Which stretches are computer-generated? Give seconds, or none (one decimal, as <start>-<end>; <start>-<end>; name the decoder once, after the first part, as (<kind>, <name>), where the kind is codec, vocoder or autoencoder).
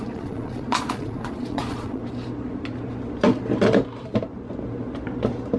0.0-2.0 (vocoder, Vocos)